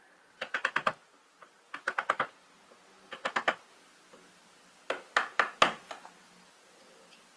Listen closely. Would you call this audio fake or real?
real